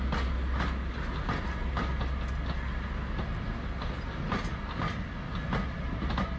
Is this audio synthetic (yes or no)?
no